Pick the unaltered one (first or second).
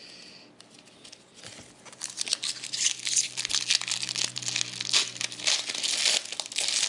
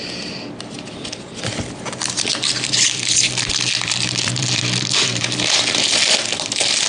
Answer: first